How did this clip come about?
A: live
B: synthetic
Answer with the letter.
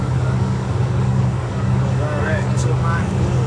B